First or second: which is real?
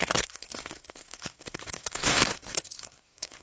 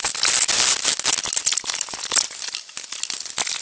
second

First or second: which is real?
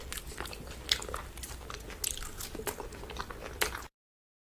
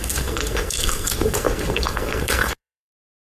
first